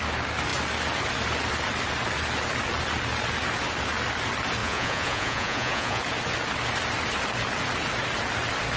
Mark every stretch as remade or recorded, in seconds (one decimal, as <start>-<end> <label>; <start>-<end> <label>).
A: 0.0-4.6 recorded; 4.6-6.0 remade; 6.0-8.8 recorded